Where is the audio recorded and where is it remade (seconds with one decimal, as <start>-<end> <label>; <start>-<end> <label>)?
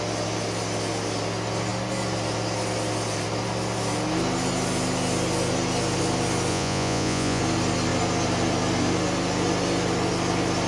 0.0-6.5 recorded; 6.5-7.4 remade; 7.4-10.7 recorded